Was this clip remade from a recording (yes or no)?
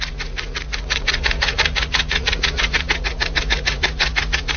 yes